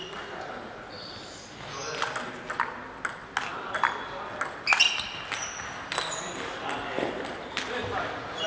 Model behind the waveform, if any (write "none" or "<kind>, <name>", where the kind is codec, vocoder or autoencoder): none